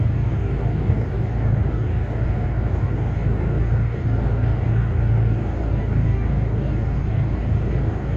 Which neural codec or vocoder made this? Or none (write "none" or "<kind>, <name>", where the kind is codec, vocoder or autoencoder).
codec, DAC